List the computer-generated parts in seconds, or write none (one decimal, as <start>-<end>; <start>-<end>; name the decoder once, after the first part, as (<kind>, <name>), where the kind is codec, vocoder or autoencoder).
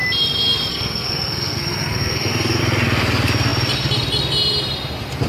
0.7-2.6 (codec, SNAC)